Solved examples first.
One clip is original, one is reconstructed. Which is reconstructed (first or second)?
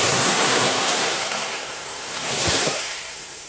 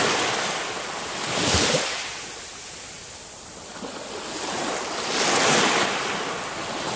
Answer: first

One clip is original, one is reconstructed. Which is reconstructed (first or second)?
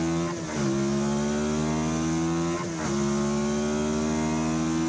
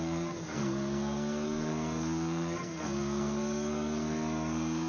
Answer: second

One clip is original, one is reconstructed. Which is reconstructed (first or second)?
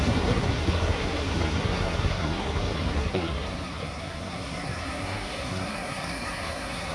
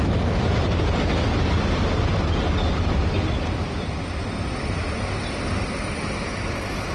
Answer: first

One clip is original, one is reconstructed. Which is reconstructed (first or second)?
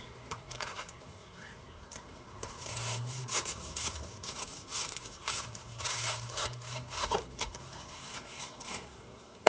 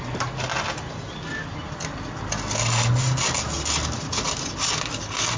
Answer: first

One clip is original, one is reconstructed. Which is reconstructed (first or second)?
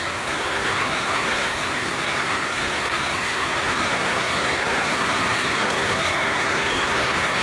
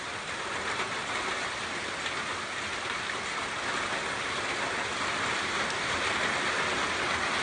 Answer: first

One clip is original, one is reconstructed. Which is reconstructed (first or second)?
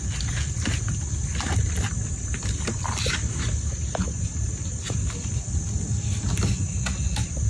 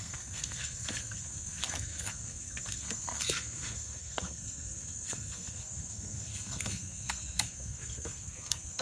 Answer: second